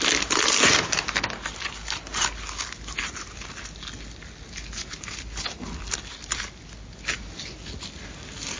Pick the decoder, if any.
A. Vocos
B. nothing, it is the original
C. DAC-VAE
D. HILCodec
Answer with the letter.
B